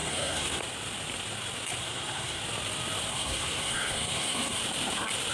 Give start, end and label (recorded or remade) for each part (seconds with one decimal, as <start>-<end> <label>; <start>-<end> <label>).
0.0-0.6 remade; 0.6-1.8 recorded; 1.8-2.4 remade; 2.4-3.1 recorded; 3.1-4.6 remade; 4.6-5.3 recorded